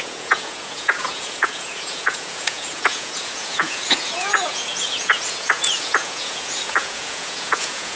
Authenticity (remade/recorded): remade